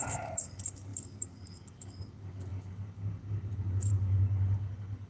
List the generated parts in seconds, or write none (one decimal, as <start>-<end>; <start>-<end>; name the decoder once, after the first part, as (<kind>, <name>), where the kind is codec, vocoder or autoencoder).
0.0-5.1 (codec, DAC)